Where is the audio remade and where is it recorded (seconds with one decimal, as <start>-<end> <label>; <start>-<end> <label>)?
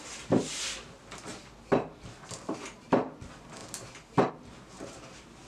0.0-0.7 remade; 0.7-5.5 recorded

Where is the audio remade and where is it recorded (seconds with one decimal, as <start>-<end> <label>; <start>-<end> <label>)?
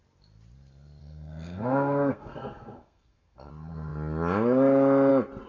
0.0-1.0 recorded; 1.0-3.5 remade; 3.5-5.5 recorded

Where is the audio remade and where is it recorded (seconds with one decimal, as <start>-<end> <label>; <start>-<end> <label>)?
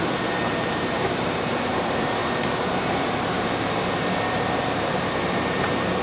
0.0-2.2 remade; 2.2-3.9 recorded; 3.9-6.0 remade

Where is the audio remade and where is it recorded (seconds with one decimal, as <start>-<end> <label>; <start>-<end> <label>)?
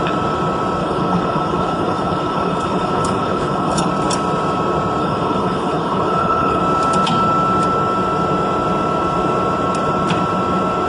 0.0-0.8 recorded; 0.8-3.9 remade; 3.9-5.0 recorded; 5.0-6.6 remade; 6.6-10.9 recorded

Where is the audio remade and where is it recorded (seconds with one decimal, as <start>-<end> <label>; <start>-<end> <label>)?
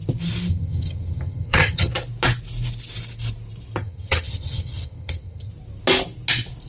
0.0-0.5 recorded; 0.5-1.9 remade; 1.9-3.8 recorded; 3.8-5.5 remade; 5.5-6.7 recorded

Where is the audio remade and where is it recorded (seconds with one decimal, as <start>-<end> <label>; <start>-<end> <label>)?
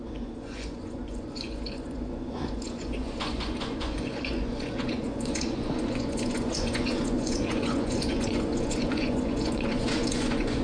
0.0-10.6 remade